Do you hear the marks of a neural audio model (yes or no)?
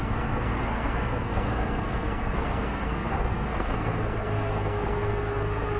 yes